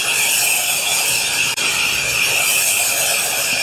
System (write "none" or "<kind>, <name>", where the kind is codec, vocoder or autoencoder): none